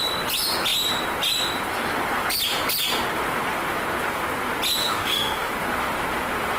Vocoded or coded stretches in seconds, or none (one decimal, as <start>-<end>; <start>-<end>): 4.8-5.5